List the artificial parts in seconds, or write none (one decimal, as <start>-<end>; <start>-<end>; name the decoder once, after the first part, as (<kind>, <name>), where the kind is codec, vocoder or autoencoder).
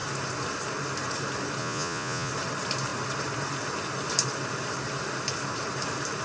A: 1.6-2.3 (vocoder, Vocos)